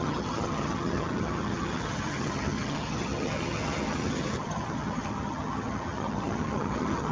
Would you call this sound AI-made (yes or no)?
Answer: yes